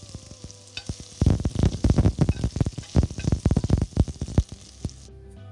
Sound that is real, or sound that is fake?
real